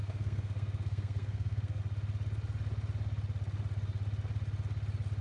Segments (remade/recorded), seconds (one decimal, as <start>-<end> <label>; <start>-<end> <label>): 0.0-1.8 remade; 1.8-5.2 recorded